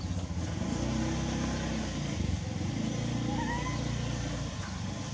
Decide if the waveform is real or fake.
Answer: real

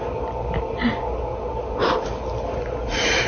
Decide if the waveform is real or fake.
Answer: real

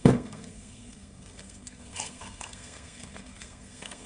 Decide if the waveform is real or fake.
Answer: fake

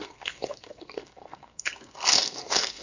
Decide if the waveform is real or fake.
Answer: fake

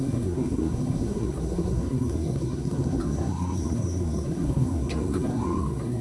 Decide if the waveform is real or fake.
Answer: fake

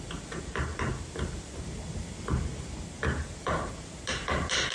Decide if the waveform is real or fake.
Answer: real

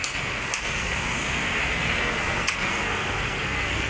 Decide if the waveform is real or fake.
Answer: fake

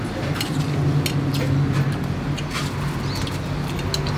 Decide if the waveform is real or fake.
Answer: real